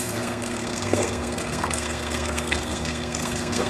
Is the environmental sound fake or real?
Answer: fake